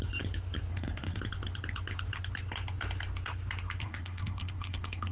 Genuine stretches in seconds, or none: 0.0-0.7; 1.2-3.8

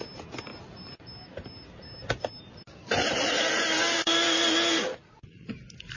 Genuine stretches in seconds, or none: 0.0-4.9; 5.5-6.0

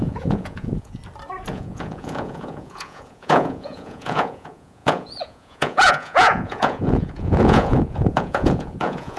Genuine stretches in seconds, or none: 1.0-1.5

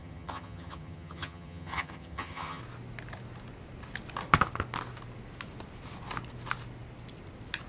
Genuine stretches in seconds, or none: 2.6-7.7